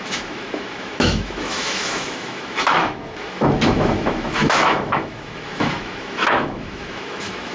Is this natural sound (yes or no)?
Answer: no